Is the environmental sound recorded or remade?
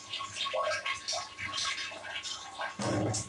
recorded